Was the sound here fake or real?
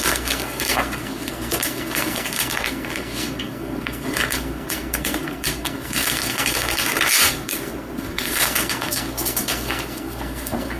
fake